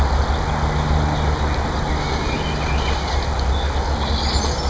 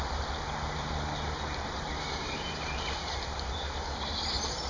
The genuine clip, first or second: first